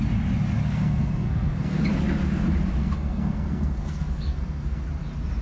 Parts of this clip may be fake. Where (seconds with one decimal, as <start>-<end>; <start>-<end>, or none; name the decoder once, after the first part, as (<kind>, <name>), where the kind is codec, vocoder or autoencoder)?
0.7-1.8 (codec, SNAC); 2.8-4.9